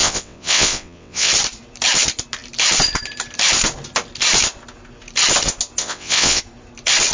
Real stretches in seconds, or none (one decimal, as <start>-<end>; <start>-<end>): 1.3-5.8; 6.4-7.1